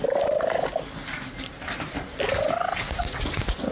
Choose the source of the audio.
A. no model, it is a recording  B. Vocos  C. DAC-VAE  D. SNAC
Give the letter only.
A